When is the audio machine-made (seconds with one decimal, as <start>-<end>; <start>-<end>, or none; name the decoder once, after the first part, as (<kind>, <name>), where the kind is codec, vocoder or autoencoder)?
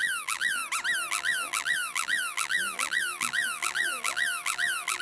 0.0-0.6 (vocoder, BigVGAN v2); 1.1-5.0